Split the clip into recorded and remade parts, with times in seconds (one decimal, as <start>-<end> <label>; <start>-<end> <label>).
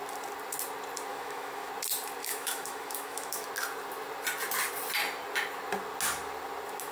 0.0-1.1 recorded; 1.1-1.7 remade; 1.7-2.2 recorded; 2.2-3.5 remade; 3.5-6.9 recorded